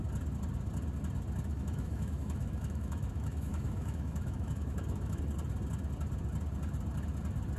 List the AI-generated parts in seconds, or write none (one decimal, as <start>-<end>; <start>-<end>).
1.5-5.2